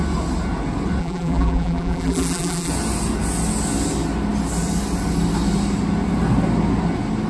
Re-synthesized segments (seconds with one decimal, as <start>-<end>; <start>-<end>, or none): 1.0-2.7